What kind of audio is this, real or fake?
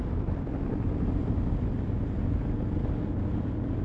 real